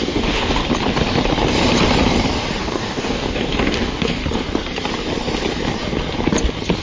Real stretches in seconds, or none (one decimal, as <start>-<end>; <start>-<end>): 0.6-2.6; 4.2-6.8